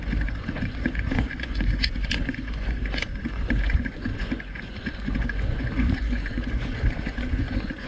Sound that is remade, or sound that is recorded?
remade